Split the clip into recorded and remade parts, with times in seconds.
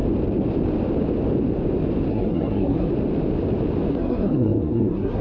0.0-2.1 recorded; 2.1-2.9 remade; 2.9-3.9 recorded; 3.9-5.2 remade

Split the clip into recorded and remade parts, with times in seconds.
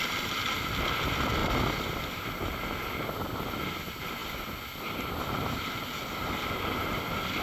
0.0-7.4 recorded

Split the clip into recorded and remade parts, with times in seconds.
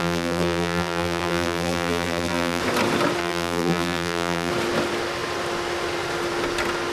0.0-2.6 remade; 2.6-3.2 recorded; 3.2-4.5 remade; 4.5-6.9 recorded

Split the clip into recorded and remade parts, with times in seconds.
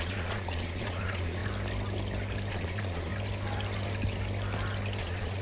0.0-1.4 remade; 1.4-2.5 recorded; 2.5-3.1 remade; 3.1-5.0 recorded; 5.0-5.4 remade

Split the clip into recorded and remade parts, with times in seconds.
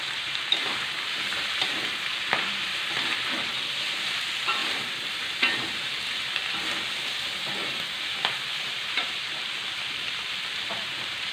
0.0-11.3 remade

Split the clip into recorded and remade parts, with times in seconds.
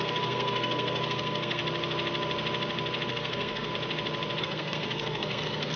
0.0-1.6 remade; 1.6-3.1 recorded; 3.1-3.7 remade; 3.7-4.4 recorded; 4.4-5.8 remade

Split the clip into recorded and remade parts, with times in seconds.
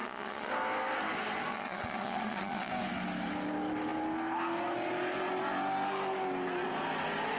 0.0-0.5 remade; 0.5-1.5 recorded; 1.5-2.7 remade; 2.7-7.4 recorded